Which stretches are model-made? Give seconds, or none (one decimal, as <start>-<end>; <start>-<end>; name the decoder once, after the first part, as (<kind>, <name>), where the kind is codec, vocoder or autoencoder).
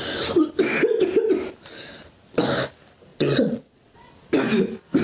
3.1-4.1 (vocoder, Vocos)